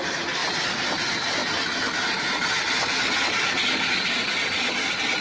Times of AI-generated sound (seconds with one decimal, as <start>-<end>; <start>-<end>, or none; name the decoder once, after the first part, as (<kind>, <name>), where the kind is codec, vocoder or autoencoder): 0.0-0.4 (vocoder, BigVGAN v2); 0.9-1.4; 3.1-5.2